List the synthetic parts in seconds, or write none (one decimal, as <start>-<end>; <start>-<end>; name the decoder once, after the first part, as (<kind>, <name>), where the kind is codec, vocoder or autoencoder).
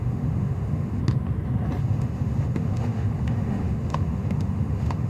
0.0-1.0 (autoencoder, DAC-VAE); 1.8-5.1